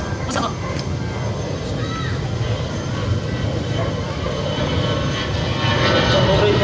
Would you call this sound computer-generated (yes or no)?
yes